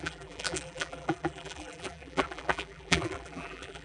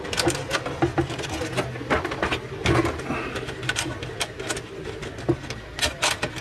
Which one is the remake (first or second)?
first